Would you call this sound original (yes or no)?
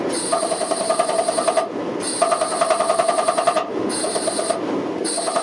no